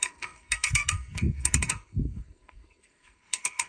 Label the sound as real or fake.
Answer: fake